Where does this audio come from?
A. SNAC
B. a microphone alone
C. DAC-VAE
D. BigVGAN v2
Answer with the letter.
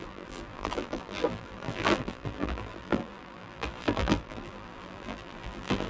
D